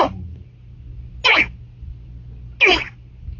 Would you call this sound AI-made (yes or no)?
no